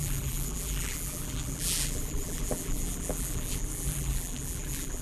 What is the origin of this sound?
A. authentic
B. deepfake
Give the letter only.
B